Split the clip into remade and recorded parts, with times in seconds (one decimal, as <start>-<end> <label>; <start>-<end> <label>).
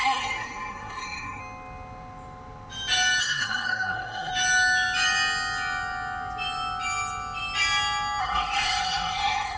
0.0-1.4 remade; 1.4-3.2 recorded; 3.2-4.3 remade; 4.3-8.2 recorded; 8.2-9.6 remade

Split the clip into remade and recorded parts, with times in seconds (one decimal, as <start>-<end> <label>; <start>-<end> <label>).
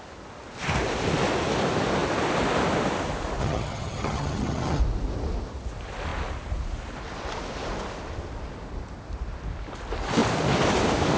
0.0-3.4 recorded; 3.4-4.8 remade; 4.8-11.2 recorded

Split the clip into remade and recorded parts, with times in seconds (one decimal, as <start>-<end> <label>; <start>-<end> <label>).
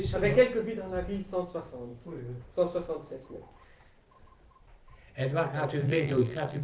0.0-5.8 recorded; 5.8-6.6 remade